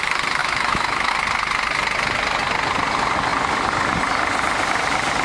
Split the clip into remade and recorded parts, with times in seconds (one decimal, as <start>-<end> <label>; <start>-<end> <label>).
0.0-0.4 recorded; 0.4-1.1 remade; 1.1-5.2 recorded